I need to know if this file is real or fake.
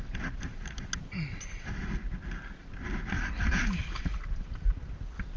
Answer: real